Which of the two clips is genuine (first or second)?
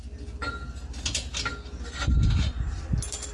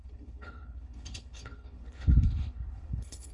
first